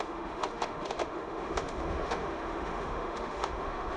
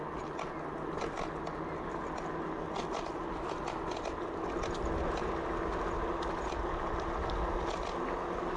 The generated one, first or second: first